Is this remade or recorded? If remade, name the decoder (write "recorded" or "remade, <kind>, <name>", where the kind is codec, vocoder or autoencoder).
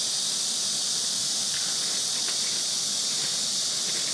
recorded